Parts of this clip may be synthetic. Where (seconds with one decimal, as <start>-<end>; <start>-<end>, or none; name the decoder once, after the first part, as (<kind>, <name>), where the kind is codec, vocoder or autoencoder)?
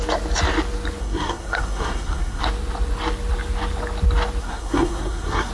1.0-2.4 (codec, SNAC); 4.4-5.5